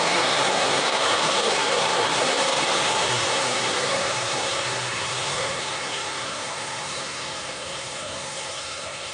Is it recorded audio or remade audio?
remade